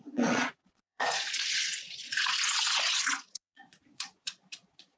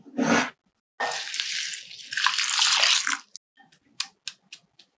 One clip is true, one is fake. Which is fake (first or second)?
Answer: first